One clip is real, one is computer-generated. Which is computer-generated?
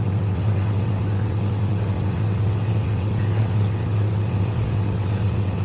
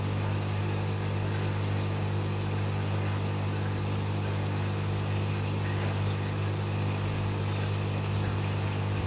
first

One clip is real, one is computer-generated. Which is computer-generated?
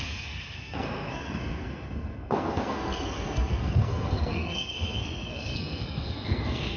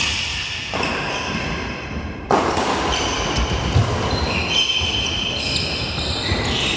first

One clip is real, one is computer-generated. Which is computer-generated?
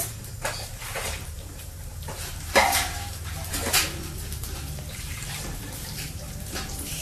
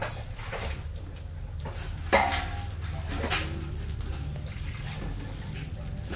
first